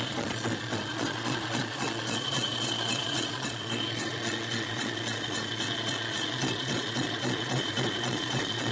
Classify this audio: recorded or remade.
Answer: remade